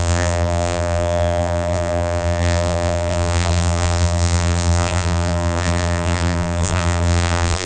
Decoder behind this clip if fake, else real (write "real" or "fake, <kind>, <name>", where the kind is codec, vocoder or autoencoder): fake, vocoder, BigVGAN v2